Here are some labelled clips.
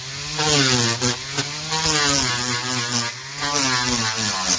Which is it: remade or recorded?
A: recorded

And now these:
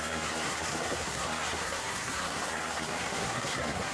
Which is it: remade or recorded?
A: remade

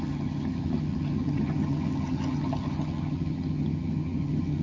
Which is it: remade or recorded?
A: remade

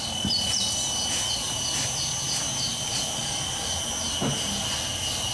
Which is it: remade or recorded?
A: recorded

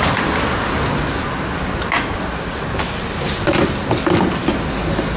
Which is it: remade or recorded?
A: recorded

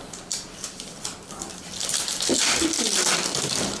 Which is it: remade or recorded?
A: remade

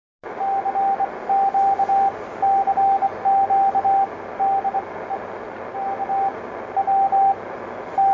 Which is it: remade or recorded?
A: recorded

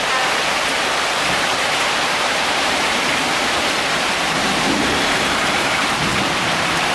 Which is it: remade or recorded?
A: remade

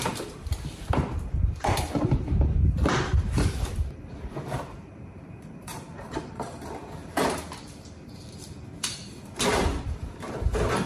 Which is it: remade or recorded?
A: remade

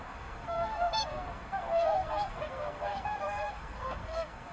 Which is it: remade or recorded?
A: remade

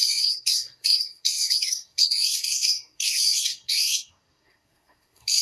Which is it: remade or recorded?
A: remade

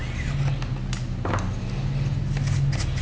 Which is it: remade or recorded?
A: recorded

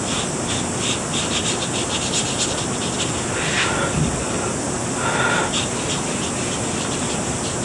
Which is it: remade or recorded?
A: recorded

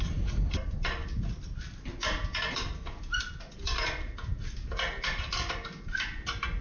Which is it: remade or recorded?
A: recorded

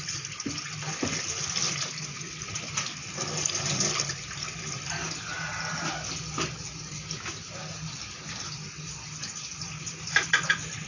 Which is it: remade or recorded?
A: recorded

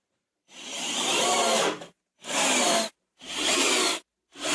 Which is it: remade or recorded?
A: remade